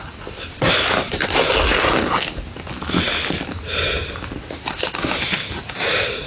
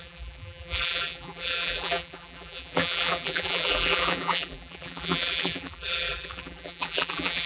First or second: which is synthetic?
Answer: second